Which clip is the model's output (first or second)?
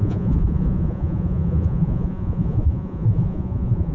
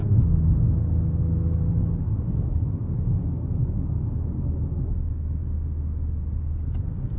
first